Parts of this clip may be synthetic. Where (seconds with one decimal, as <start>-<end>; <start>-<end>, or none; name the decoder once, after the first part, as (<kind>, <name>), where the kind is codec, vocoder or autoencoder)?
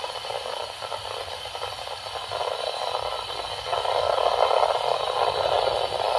none